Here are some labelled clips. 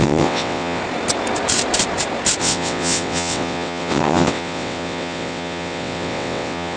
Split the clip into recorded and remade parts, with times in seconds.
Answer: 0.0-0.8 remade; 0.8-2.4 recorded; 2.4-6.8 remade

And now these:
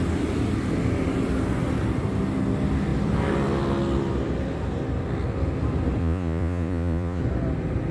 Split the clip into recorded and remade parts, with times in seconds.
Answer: 0.0-6.0 recorded; 6.0-7.2 remade; 7.2-7.9 recorded

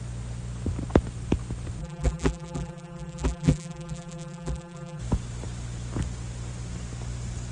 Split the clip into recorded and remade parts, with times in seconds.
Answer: 0.0-1.8 recorded; 1.8-5.0 remade; 5.0-7.5 recorded

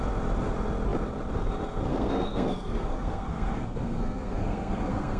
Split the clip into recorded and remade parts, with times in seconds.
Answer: 0.0-1.9 recorded; 1.9-5.2 remade

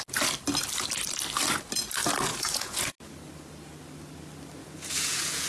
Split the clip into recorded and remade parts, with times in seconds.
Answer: 0.0-2.3 recorded; 2.3-2.8 remade; 2.8-4.6 recorded; 4.6-5.5 remade

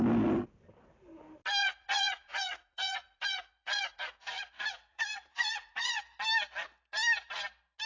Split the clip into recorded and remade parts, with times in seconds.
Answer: 0.0-1.6 recorded; 1.6-6.0 remade; 6.0-7.9 recorded

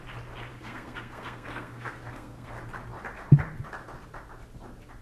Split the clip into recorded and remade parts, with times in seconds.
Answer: 0.0-0.5 recorded; 0.5-2.5 remade; 2.5-5.0 recorded

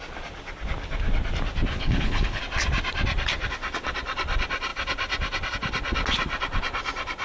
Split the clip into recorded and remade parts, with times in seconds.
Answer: 0.0-1.7 recorded; 1.7-2.4 remade; 2.4-7.2 recorded